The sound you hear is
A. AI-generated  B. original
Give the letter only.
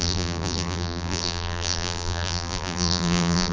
A